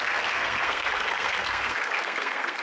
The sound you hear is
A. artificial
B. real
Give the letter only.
A